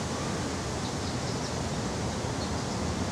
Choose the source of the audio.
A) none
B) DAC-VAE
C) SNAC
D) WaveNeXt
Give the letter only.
A